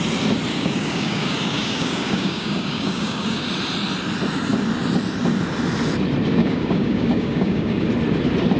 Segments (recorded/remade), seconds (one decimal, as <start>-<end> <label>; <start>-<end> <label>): 0.0-0.5 recorded; 0.5-3.5 remade; 3.5-6.4 recorded; 6.4-7.9 remade; 7.9-8.6 recorded